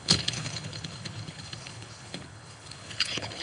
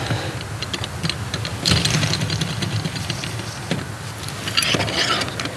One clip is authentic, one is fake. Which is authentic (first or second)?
second